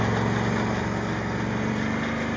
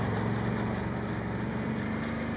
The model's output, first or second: second